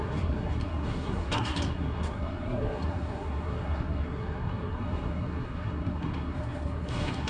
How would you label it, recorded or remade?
remade